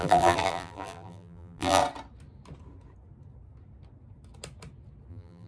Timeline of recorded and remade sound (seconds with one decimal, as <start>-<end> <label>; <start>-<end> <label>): 0.0-1.8 remade; 1.8-5.1 recorded; 5.1-5.5 remade